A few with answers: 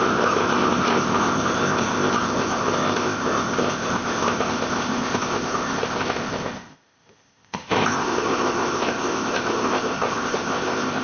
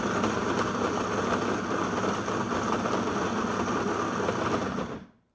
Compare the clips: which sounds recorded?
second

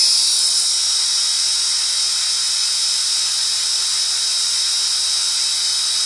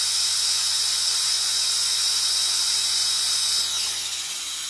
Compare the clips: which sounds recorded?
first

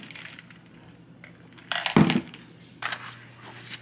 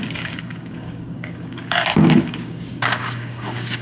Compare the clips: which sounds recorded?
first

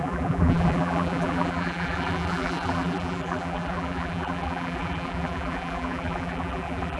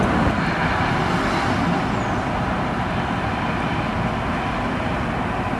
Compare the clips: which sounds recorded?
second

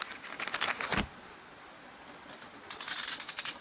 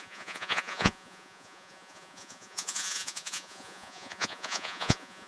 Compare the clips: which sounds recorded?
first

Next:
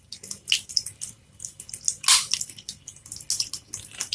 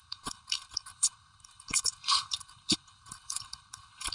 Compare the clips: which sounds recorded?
first